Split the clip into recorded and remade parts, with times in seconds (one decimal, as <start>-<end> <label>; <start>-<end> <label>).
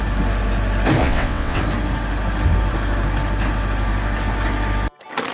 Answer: 0.0-1.0 recorded; 1.0-1.6 remade; 1.6-5.3 recorded